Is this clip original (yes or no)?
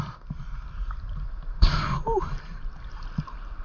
no